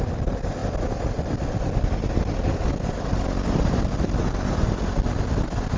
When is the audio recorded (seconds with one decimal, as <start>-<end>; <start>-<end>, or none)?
0.0-5.8